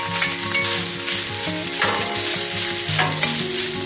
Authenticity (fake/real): real